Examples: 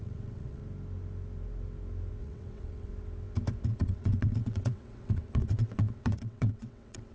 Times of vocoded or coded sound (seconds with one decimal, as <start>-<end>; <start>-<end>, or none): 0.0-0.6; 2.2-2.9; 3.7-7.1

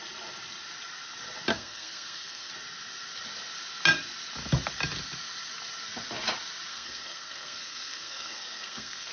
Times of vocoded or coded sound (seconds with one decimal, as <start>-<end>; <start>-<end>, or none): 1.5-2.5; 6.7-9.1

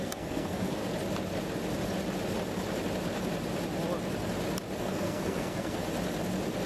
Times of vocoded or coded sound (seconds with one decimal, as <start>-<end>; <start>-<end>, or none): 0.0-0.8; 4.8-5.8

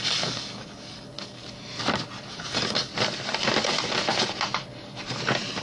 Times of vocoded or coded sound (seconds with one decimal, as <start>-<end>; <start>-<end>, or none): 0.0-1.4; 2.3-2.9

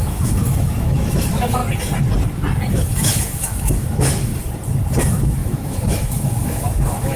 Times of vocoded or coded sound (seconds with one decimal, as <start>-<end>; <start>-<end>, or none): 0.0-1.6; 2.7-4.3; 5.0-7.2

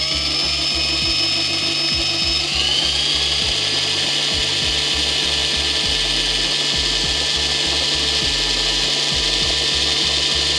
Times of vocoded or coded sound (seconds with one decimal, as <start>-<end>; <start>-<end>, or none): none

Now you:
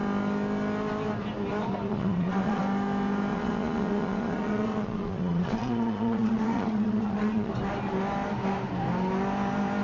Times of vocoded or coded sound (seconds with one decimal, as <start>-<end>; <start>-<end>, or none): 1.9-2.6; 3.3-7.5

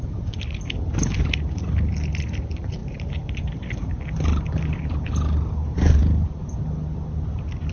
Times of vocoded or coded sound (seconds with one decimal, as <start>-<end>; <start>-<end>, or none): 2.8-4.8